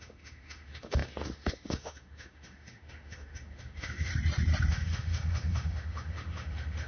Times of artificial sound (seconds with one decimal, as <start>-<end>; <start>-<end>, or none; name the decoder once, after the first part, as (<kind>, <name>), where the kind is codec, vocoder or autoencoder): 0.0-4.1 (autoencoder, DAC-VAE); 4.7-6.9